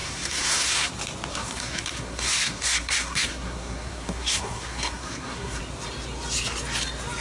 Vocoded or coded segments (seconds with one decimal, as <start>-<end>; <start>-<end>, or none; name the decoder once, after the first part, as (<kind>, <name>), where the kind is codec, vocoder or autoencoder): 0.0-0.9 (codec, SNAC); 1.3-5.6